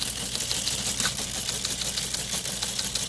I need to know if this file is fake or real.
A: real